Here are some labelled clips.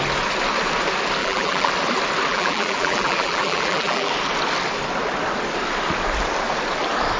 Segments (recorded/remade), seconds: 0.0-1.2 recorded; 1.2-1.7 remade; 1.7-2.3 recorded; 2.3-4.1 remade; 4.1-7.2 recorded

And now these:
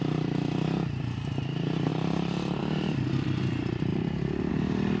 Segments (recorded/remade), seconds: 0.0-3.9 recorded; 3.9-4.5 remade; 4.5-5.0 recorded

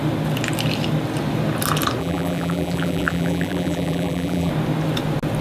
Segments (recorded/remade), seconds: 0.0-2.0 recorded; 2.0-4.5 remade; 4.5-5.4 recorded